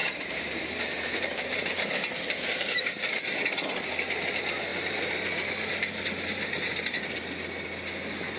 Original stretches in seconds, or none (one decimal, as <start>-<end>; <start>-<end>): 2.8-8.4